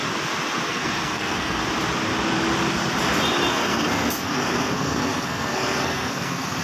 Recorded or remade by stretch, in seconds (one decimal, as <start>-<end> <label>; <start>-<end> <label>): 0.0-0.7 recorded; 0.7-1.6 remade; 1.6-3.5 recorded; 3.5-6.6 remade